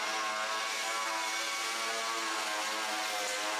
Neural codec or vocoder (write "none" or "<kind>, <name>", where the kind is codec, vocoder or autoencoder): none